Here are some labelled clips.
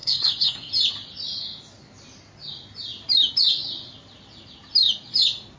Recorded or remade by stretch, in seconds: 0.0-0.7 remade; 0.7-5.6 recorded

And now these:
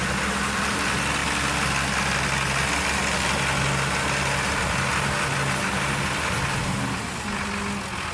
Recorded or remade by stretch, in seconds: 0.0-8.1 recorded

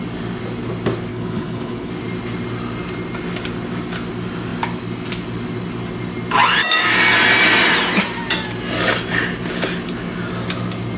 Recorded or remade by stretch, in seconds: 0.0-1.1 recorded; 1.1-1.9 remade; 1.9-11.0 recorded

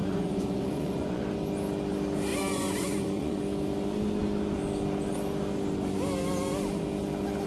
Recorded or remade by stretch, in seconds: 0.0-1.2 remade; 1.2-2.3 recorded; 2.3-3.4 remade; 3.4-7.5 recorded

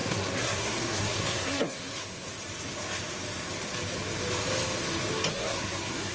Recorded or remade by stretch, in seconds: 0.0-2.3 remade; 2.3-5.3 recorded; 5.3-6.1 remade

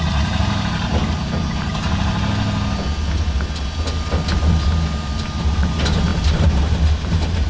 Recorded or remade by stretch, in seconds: 0.0-1.0 remade; 1.0-5.4 recorded; 5.4-7.5 remade

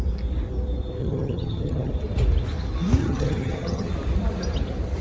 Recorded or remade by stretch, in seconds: 0.0-1.0 recorded; 1.0-1.9 remade; 1.9-3.0 recorded; 3.0-3.9 remade; 3.9-5.0 recorded

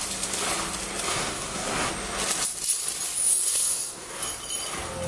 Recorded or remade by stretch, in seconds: 0.0-1.1 recorded; 1.1-1.9 remade; 1.9-3.3 recorded; 3.3-4.2 remade; 4.2-5.1 recorded